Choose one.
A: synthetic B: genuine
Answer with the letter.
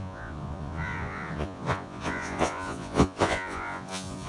A